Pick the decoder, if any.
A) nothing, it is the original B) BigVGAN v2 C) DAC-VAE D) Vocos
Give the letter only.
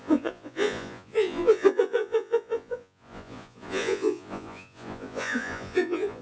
D